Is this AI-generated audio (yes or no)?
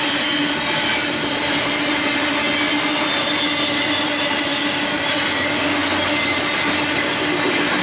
no